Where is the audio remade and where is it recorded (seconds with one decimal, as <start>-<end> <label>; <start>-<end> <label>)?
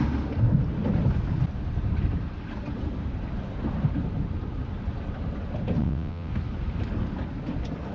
0.0-5.8 recorded; 5.8-6.3 remade; 6.3-7.9 recorded